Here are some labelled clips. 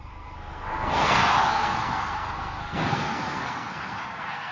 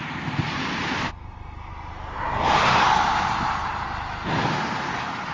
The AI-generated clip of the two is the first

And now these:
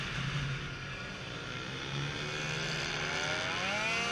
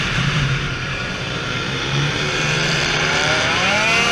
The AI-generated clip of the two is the second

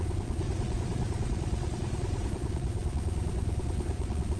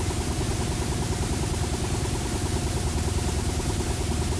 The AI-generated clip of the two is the first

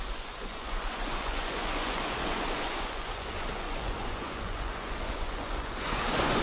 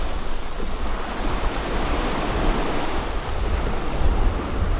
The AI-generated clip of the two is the first